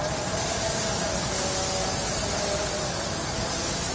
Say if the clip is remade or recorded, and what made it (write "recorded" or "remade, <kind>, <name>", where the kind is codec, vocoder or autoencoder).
recorded